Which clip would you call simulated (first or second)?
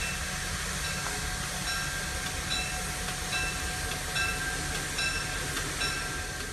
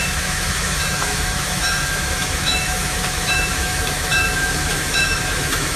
second